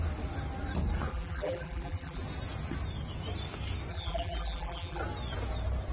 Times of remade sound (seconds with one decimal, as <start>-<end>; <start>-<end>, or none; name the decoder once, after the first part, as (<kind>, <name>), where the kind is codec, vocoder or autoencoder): 1.1-2.2 (vocoder, BigVGAN v2); 3.9-5.0